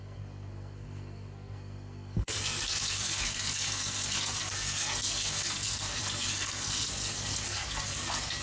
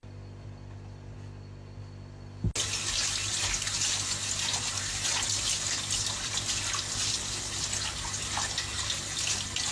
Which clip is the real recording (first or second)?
second